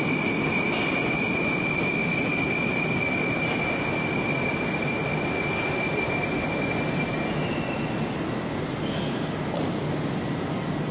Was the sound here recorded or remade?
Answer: recorded